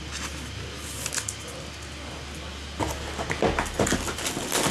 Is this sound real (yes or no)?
yes